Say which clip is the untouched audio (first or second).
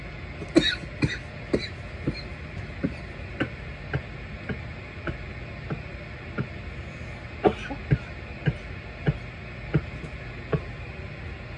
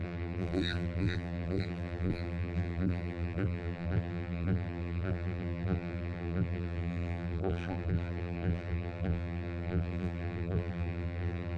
first